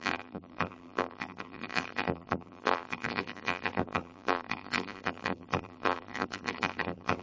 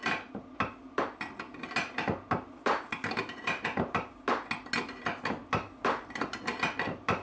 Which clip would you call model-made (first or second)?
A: first